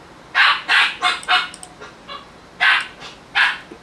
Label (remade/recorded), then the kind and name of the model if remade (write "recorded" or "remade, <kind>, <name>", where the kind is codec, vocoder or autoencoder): recorded